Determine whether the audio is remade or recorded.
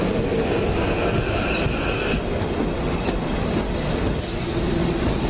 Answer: recorded